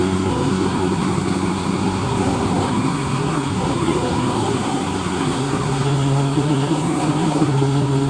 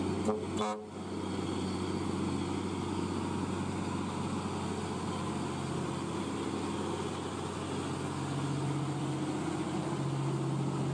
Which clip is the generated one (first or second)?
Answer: first